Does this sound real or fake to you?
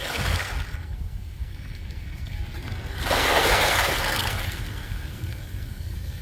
fake